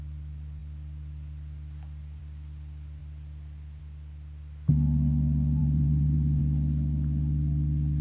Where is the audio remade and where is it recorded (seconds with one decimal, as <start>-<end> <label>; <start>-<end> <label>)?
0.0-5.6 recorded; 5.6-6.4 remade; 6.4-8.0 recorded